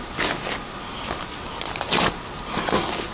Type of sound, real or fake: real